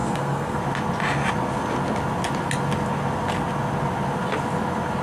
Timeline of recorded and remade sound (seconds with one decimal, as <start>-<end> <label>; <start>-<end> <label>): 0.0-0.6 remade; 0.6-5.0 recorded